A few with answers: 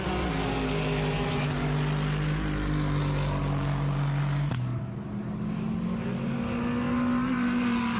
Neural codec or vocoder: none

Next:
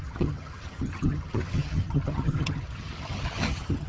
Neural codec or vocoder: vocoder, HiFi-GAN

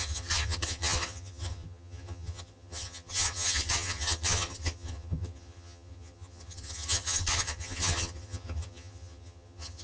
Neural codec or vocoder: vocoder, HiFi-GAN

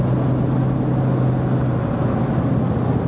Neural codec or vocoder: none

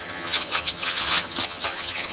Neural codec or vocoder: vocoder, HiFi-GAN